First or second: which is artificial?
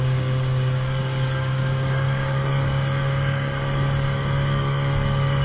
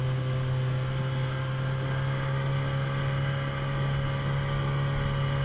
first